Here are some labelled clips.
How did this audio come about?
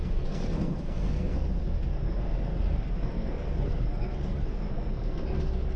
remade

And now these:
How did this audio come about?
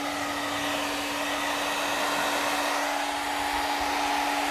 recorded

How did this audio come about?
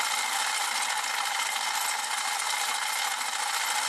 recorded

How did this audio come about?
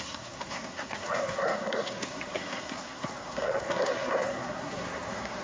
remade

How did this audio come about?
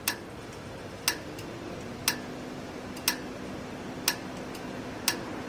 recorded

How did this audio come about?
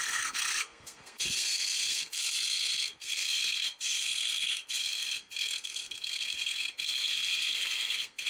remade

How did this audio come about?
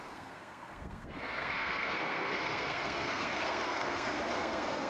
remade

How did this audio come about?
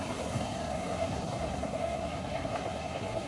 remade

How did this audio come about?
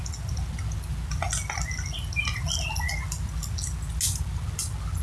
recorded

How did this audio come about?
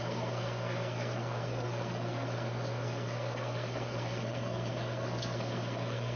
remade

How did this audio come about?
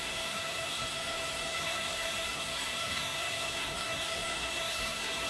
remade